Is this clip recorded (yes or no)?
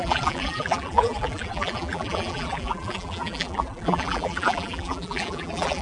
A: no